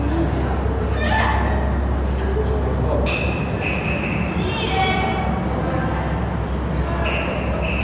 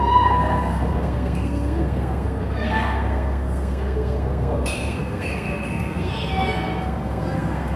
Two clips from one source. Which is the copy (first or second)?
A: second